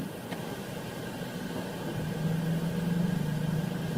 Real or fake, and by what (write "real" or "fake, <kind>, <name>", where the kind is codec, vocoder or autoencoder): real